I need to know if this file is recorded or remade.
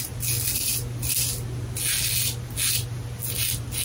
recorded